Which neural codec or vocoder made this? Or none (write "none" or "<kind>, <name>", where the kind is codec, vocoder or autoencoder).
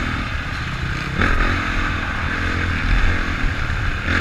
none